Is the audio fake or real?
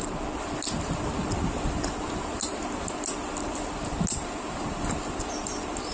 real